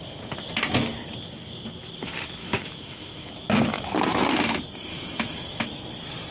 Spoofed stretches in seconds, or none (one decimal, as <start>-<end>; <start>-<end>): 2.4-3.3; 4.9-5.6